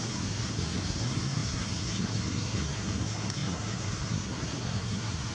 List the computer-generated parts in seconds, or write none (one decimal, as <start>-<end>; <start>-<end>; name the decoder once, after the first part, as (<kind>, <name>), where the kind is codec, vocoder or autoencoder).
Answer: 0.0-5.3 (codec, SNAC)